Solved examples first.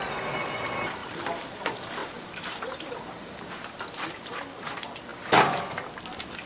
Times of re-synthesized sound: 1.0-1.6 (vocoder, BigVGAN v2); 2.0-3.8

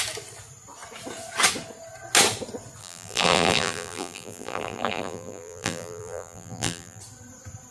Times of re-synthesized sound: 2.8-7.0 (vocoder, BigVGAN v2)

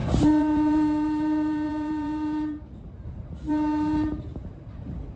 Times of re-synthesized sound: 0.0-5.2 (vocoder, BigVGAN v2)

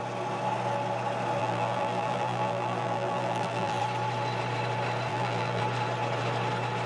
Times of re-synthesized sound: 1.4-3.8 (vocoder, BigVGAN v2); 5.1-5.6

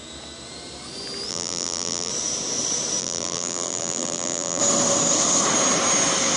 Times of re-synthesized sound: 1.3-2.1 (vocoder, BigVGAN v2); 3.0-4.6

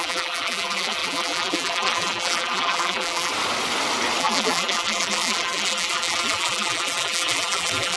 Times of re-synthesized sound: 0.0-3.3 (vocoder, BigVGAN v2); 4.2-8.0

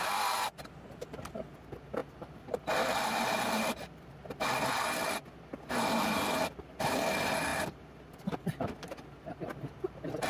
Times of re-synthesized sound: 7.5-8.6 (vocoder, BigVGAN v2)

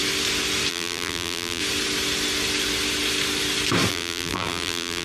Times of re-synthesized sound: 0.7-1.6 (vocoder, BigVGAN v2); 3.9-5.0